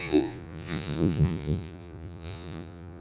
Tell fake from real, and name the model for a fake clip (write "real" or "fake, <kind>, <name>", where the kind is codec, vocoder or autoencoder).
fake, vocoder, Vocos